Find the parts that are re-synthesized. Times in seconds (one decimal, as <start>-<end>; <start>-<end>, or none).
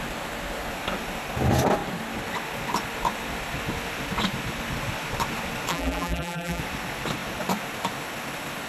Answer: 5.7-6.6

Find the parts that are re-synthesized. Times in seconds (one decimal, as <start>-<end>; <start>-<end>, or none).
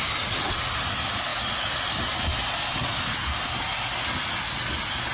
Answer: none